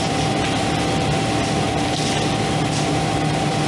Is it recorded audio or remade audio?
recorded